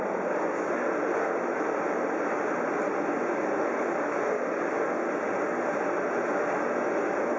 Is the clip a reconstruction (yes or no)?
no